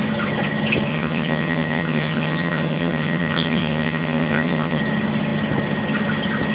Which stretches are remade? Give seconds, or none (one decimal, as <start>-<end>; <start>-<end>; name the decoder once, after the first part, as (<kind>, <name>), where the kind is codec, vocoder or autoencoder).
0.9-4.8 (vocoder, HiFi-GAN)